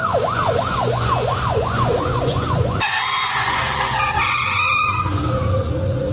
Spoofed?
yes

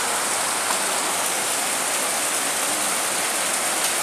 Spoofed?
no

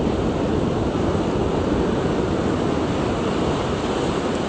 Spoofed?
no